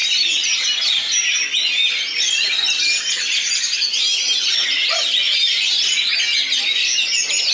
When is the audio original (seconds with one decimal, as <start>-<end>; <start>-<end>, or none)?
0.0-7.5

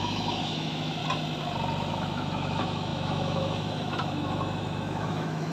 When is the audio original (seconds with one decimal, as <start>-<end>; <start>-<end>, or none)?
1.0-1.9